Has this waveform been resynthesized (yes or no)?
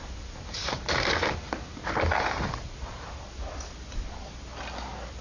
no